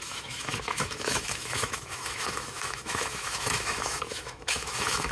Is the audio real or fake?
fake